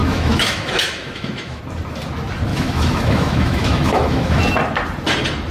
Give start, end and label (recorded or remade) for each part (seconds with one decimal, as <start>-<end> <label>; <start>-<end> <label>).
0.0-1.6 remade; 1.6-2.5 recorded; 2.5-4.4 remade; 4.4-5.5 recorded